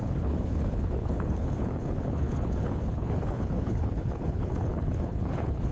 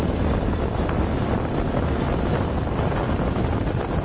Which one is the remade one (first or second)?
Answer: first